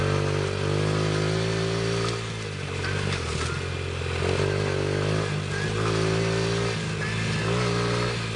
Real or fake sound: real